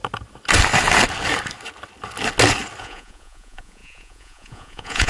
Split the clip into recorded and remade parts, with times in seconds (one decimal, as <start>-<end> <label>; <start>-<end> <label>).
0.0-2.8 recorded; 2.8-5.1 remade

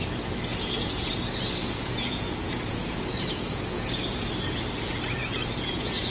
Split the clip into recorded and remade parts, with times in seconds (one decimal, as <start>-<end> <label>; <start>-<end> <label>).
0.0-0.5 recorded; 0.5-1.1 remade; 1.1-1.6 recorded; 1.6-4.3 remade; 4.3-5.2 recorded; 5.2-6.1 remade

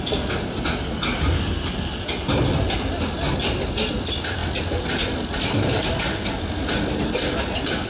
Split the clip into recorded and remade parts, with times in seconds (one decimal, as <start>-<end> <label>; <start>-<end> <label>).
0.0-7.9 recorded

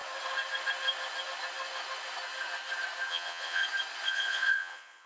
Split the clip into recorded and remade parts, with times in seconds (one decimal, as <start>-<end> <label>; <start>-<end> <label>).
0.0-3.1 recorded; 3.1-3.6 remade; 3.6-4.1 recorded; 4.1-5.1 remade